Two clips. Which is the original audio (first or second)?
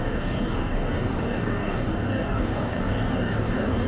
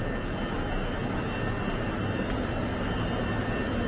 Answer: second